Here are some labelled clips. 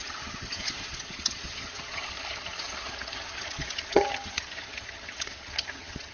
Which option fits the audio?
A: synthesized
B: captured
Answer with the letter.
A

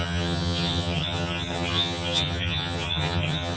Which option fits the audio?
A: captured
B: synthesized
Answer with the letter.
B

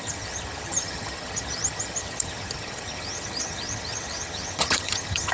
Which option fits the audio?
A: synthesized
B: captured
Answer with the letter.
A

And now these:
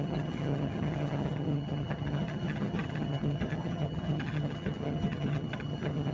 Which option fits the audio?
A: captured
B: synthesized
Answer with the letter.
B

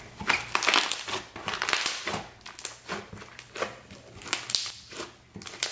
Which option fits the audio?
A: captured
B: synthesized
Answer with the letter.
A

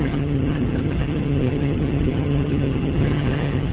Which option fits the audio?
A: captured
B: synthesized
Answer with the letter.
B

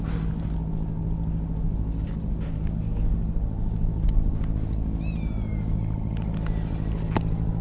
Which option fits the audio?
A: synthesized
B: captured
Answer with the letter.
B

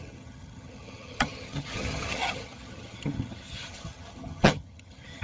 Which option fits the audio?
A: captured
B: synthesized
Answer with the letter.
B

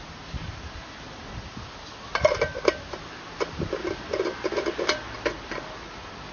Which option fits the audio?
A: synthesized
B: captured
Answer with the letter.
B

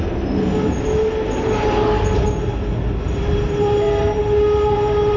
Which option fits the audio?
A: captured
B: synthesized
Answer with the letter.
A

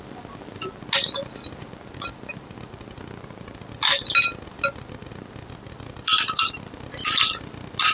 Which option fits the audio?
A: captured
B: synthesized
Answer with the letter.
A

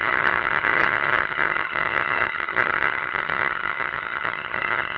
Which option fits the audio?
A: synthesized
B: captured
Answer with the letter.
A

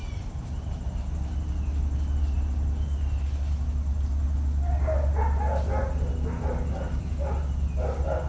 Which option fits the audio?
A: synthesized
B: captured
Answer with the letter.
B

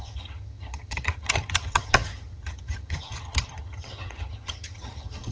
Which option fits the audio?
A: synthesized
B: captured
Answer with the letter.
A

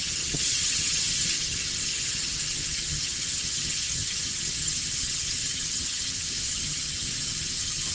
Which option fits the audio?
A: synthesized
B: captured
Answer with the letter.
A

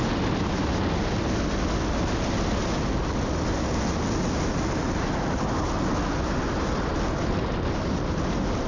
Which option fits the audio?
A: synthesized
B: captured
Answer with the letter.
B